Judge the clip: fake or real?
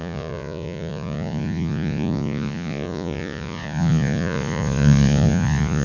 fake